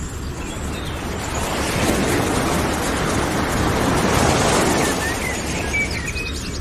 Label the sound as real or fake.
real